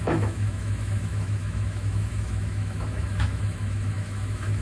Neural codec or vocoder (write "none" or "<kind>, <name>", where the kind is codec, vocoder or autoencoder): autoencoder, DAC-VAE